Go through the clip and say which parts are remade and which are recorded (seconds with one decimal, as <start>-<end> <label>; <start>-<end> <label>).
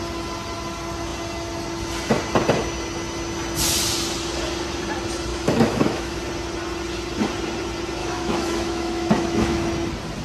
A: 0.0-5.3 recorded; 5.3-6.2 remade; 6.2-8.0 recorded; 8.0-9.7 remade; 9.7-10.2 recorded